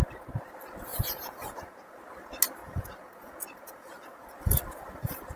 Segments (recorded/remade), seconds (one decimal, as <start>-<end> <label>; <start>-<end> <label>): 0.0-0.9 recorded; 0.9-2.0 remade; 2.0-2.6 recorded; 2.6-4.3 remade; 4.3-5.4 recorded